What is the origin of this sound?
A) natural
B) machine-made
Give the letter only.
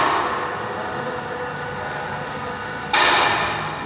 A